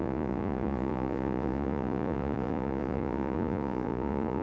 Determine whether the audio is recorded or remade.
remade